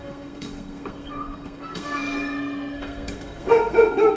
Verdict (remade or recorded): remade